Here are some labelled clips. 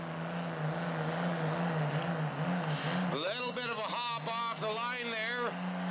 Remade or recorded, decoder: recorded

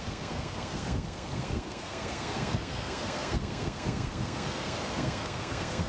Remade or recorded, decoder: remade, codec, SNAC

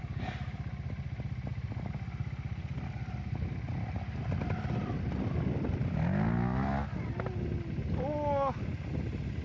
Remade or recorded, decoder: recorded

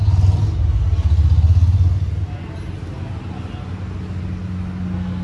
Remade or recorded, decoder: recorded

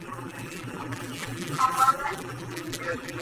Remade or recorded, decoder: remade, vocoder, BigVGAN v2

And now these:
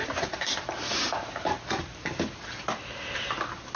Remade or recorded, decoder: recorded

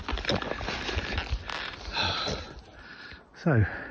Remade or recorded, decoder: recorded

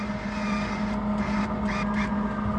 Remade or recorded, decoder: recorded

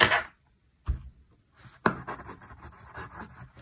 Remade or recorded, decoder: recorded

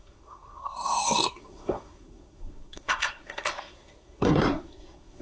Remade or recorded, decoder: remade, codec, SNAC